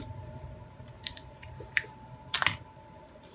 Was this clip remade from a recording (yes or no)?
yes